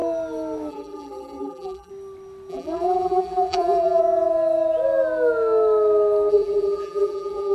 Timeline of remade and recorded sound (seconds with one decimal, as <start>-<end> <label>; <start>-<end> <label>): 0.0-0.7 recorded; 0.7-1.9 remade; 1.9-2.5 recorded; 2.5-4.0 remade; 4.0-6.3 recorded; 6.3-7.5 remade